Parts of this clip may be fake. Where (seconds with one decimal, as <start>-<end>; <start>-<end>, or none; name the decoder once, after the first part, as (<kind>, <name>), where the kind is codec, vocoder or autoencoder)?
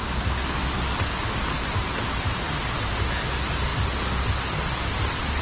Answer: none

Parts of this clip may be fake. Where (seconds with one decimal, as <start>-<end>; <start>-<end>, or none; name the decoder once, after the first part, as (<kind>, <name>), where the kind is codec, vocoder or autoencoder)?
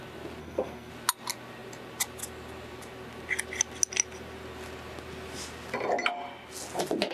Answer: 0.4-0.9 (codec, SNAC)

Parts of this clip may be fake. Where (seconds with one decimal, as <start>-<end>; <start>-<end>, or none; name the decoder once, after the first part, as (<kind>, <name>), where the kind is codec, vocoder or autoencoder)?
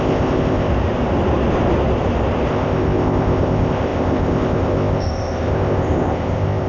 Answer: 0.0-0.7 (codec, ZipCodec); 2.5-6.7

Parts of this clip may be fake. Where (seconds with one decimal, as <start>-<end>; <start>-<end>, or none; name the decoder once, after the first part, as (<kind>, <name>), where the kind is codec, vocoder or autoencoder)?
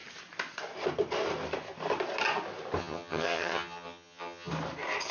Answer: 2.8-4.5 (vocoder, HiFi-GAN)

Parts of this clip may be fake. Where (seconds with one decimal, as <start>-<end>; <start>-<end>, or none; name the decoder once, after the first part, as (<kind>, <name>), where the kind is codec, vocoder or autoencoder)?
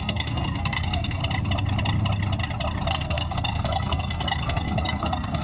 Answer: 0.0-1.2 (codec, SNAC); 2.9-5.4